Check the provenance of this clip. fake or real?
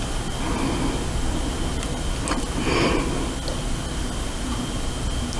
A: real